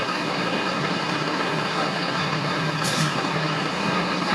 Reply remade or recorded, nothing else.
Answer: remade